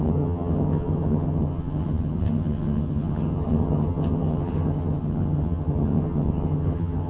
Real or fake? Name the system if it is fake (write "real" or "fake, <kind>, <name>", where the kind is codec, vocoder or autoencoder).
fake, vocoder, HiFi-GAN